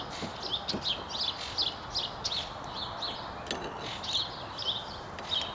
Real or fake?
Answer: real